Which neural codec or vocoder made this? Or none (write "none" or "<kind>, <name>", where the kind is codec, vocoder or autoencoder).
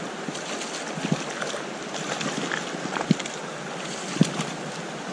none